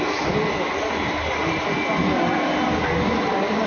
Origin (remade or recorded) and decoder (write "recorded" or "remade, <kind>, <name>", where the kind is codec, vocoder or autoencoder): recorded